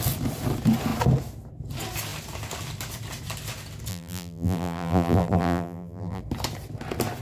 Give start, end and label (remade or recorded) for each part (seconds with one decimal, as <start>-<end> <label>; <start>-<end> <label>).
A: 0.0-3.9 recorded; 3.9-6.2 remade; 6.2-7.2 recorded